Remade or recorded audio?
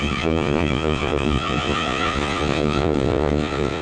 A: remade